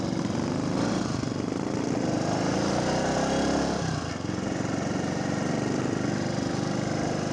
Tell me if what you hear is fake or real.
real